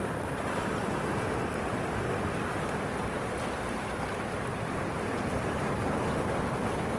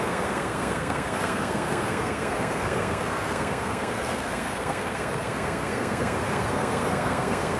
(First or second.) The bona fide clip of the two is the first